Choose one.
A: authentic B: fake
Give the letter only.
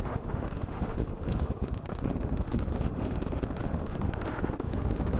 B